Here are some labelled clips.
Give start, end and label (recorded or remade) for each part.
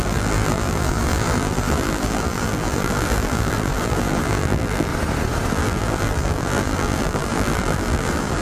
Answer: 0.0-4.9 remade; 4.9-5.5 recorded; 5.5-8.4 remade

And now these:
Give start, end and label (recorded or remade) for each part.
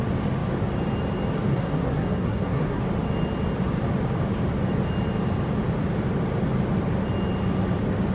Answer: 0.0-1.5 recorded; 1.5-2.8 remade; 2.8-8.1 recorded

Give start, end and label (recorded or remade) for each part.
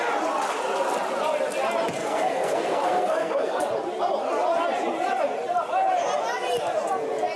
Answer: 0.0-2.0 recorded; 2.0-3.6 remade; 3.6-7.4 recorded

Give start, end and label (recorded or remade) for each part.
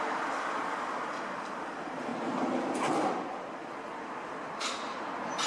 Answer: 0.0-5.5 recorded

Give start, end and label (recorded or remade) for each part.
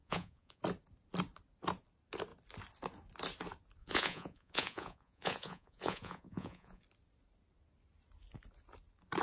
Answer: 0.0-0.6 remade; 0.6-3.8 recorded; 3.8-6.8 remade; 6.8-9.2 recorded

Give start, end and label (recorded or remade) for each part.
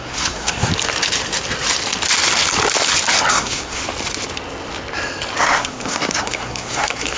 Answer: 0.0-0.7 remade; 0.7-3.3 recorded; 3.3-3.8 remade; 3.8-5.4 recorded; 5.4-7.2 remade